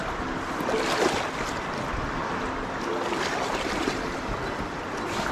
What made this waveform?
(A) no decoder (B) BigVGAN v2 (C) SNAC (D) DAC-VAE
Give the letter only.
A